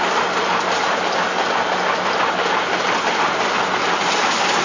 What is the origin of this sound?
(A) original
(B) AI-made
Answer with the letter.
A